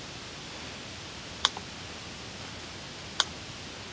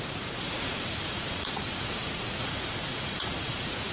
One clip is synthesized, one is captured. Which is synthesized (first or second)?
second